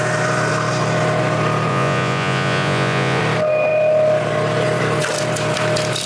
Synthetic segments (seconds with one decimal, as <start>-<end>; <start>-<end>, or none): 1.7-3.2